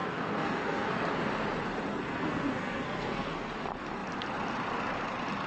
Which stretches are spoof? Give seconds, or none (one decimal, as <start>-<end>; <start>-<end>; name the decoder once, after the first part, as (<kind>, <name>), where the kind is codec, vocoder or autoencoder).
0.0-1.1 (codec, SNAC); 1.9-3.5